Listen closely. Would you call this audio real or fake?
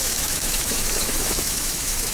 fake